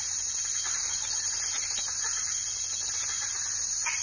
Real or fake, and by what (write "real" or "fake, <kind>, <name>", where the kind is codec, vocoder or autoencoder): real